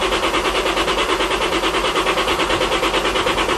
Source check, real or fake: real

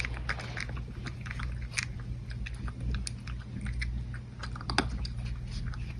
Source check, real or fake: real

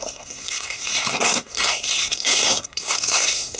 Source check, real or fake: fake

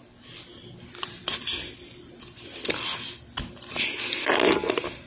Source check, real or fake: real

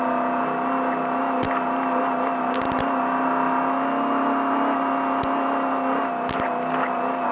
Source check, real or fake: real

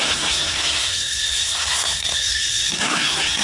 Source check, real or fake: fake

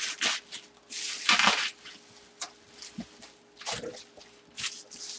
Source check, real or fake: real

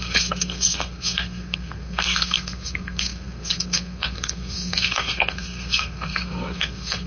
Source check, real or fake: fake